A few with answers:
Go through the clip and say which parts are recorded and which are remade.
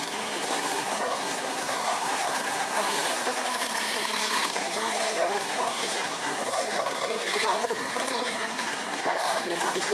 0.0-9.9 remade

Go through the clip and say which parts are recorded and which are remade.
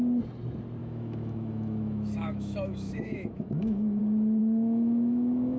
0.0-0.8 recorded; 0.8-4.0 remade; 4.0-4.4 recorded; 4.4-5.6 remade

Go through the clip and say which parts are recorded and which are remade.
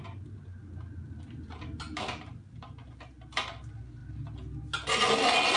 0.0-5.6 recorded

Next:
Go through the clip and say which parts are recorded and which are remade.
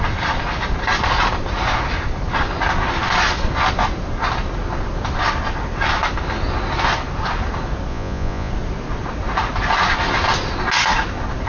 0.0-7.9 recorded; 7.9-8.5 remade; 8.5-11.5 recorded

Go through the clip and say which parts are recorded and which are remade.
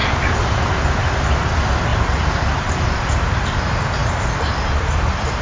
0.0-1.3 remade; 1.3-1.9 recorded; 1.9-3.5 remade; 3.5-4.0 recorded; 4.0-5.4 remade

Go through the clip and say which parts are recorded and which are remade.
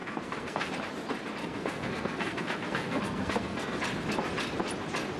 0.0-0.7 remade; 0.7-1.4 recorded; 1.4-3.8 remade; 3.8-5.2 recorded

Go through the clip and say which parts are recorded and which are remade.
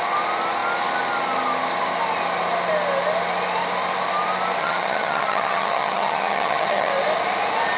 0.0-4.6 recorded; 4.6-6.9 remade; 6.9-7.8 recorded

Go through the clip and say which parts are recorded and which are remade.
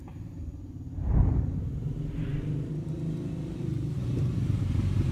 0.0-0.5 remade; 0.5-3.6 recorded; 3.6-5.1 remade